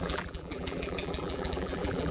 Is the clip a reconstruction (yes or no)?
yes